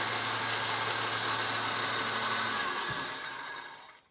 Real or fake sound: real